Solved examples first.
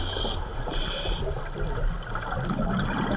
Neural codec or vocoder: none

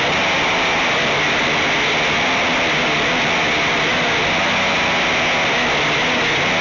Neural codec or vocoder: none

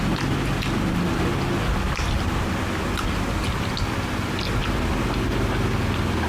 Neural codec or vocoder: none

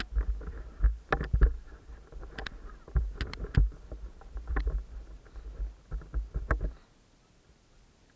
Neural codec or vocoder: none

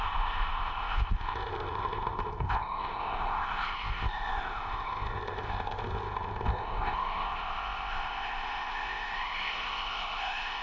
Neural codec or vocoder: codec, ZipCodec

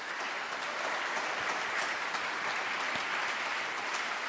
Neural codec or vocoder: none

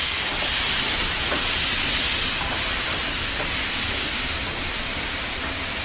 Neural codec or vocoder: vocoder, BigVGAN v2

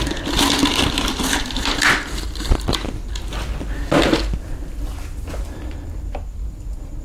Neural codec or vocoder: none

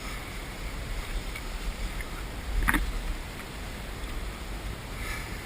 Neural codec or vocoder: vocoder, BigVGAN v2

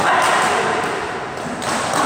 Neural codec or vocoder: none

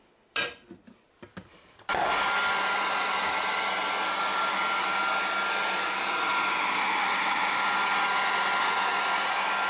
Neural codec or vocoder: none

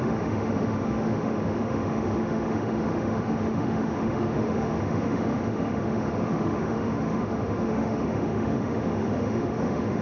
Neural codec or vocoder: autoencoder, DAC-VAE